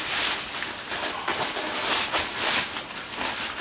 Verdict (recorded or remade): recorded